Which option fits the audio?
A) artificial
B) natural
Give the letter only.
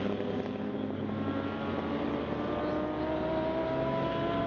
B